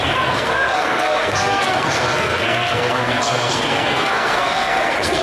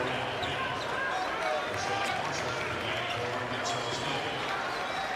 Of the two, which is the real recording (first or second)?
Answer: second